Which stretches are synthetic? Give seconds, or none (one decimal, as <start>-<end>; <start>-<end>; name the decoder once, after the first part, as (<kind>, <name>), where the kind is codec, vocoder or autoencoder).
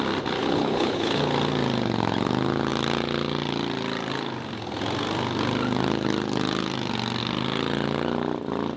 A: 0.4-1.2 (codec, HILCodec)